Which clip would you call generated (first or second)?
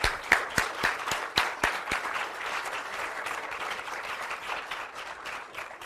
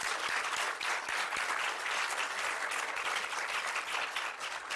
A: first